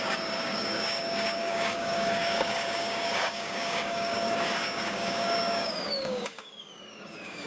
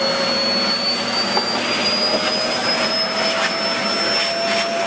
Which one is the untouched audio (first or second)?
second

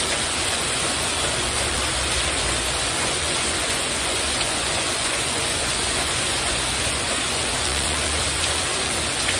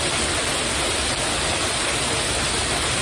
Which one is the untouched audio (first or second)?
second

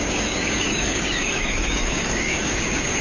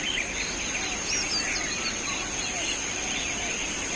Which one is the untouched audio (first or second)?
second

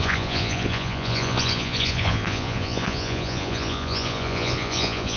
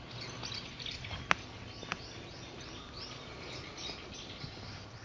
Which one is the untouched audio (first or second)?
second